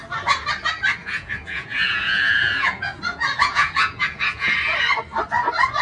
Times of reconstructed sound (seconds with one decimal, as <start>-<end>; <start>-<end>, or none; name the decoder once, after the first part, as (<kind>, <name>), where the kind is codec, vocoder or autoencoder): 1.0-4.5 (vocoder, Vocos)